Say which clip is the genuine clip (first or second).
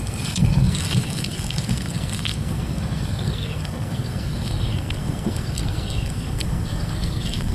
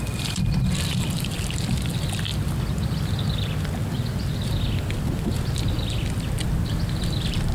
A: second